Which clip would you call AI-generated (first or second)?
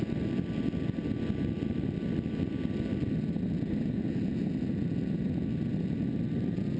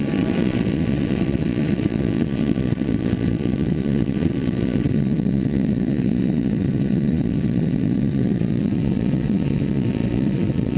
second